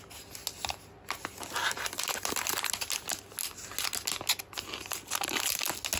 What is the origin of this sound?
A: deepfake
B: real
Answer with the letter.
B